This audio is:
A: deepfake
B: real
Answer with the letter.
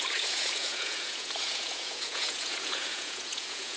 A